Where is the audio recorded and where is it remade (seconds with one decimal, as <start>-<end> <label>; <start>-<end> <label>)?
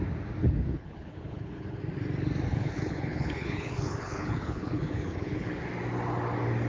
0.0-0.4 recorded; 0.4-1.8 remade; 1.8-2.5 recorded; 2.5-5.5 remade; 5.5-6.7 recorded